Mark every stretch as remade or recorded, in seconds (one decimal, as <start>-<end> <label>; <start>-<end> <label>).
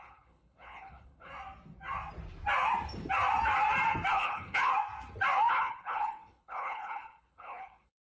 0.0-1.3 remade; 1.3-4.1 recorded; 4.1-4.7 remade; 4.7-5.5 recorded; 5.5-8.2 remade